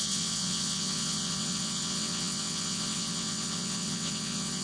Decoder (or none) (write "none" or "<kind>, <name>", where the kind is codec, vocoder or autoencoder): vocoder, WaveNeXt